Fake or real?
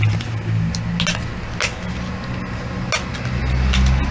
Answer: real